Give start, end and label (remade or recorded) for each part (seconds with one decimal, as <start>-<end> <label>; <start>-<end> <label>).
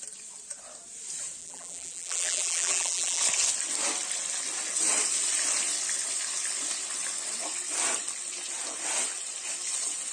0.0-1.4 recorded; 1.4-3.2 remade; 3.2-10.1 recorded